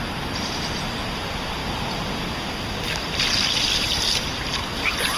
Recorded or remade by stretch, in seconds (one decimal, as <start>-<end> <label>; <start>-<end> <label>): 0.0-5.2 recorded

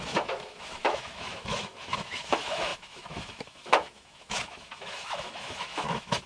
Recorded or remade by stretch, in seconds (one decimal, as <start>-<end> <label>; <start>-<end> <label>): 0.0-6.3 remade

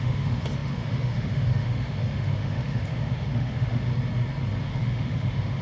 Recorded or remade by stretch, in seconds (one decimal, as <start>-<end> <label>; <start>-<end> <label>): 0.0-3.9 remade; 3.9-4.6 recorded; 4.6-5.6 remade

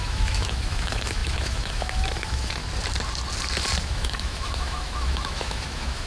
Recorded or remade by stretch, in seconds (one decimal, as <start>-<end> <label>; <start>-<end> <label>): 0.0-2.6 remade; 2.6-3.8 recorded; 3.8-6.1 remade

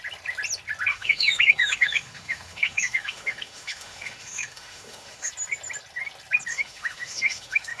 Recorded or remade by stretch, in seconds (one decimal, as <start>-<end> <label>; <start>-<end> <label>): 0.0-0.9 recorded; 0.9-5.3 remade; 5.3-6.5 recorded; 6.5-7.8 remade